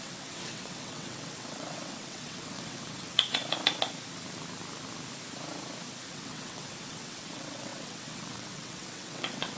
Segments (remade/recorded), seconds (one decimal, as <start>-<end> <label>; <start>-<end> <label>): 0.0-3.4 remade; 3.4-6.1 recorded; 6.1-9.6 remade